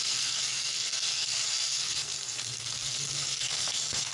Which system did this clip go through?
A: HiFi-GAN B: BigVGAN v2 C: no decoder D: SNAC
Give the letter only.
D